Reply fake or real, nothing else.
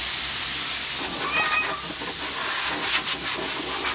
real